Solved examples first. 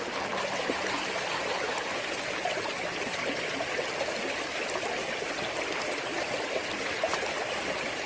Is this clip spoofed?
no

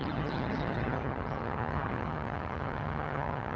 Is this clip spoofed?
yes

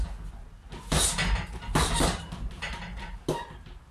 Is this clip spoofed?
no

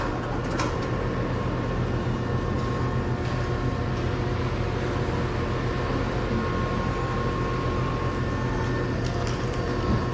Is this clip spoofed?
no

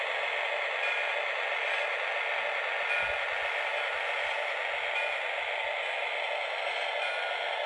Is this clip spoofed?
no